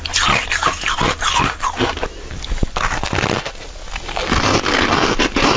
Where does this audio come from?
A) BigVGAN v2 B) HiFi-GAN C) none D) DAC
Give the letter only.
C